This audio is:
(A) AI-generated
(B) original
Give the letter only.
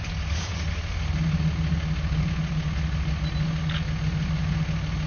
B